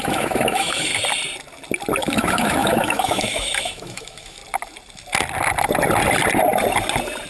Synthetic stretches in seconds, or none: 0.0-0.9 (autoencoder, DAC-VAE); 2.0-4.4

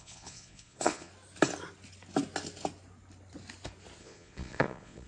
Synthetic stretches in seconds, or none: 0.0-1.1 (vocoder, Vocos); 4.0-5.1

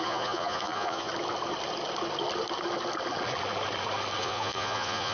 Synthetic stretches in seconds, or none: 0.0-1.1 (vocoder, Vocos); 4.2-5.1

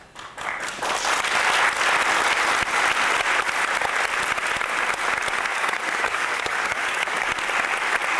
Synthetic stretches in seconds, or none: 5.5-7.3 (codec, DAC)